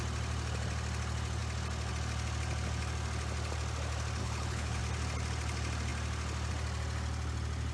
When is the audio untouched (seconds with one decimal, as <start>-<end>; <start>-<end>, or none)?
0.0-4.2; 4.8-7.7